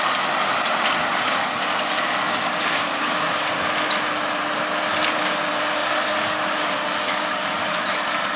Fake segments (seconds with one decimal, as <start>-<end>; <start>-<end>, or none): 1.1-3.4; 5.8-8.0